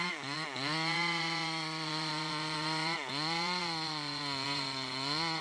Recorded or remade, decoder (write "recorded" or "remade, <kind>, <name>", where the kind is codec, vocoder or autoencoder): remade, vocoder, Vocos